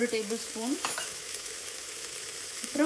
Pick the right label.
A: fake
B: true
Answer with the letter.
A